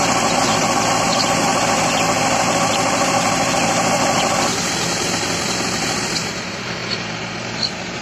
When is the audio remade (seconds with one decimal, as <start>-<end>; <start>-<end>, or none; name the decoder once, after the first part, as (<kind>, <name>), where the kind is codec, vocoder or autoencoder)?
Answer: 0.0-8.0 (vocoder, BigVGAN v2)